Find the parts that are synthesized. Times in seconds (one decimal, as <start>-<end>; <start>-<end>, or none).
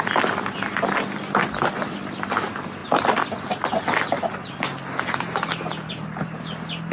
none